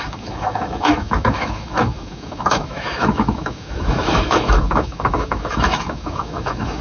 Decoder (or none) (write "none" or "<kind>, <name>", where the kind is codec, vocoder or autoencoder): autoencoder, DAC-VAE